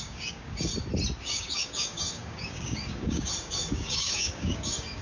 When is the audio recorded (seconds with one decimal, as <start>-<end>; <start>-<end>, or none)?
0.7-1.2